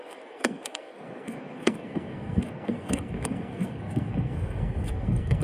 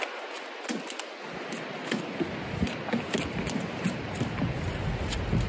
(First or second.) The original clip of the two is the second